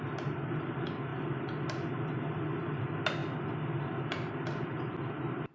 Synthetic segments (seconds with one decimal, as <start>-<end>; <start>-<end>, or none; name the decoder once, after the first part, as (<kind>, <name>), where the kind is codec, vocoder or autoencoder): none